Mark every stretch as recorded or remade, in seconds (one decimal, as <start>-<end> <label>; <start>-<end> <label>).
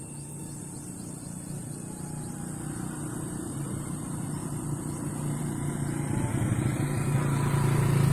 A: 0.0-8.1 recorded